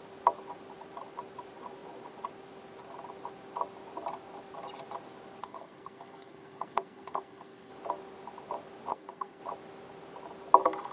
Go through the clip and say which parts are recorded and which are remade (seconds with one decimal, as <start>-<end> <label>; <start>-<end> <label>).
0.0-5.4 recorded; 5.4-7.7 remade; 7.7-8.9 recorded; 8.9-9.4 remade; 9.4-10.9 recorded